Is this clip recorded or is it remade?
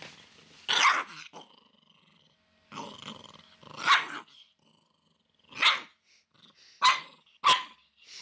recorded